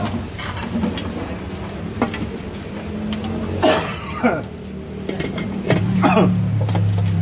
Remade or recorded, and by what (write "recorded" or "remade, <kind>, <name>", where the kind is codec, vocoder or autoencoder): recorded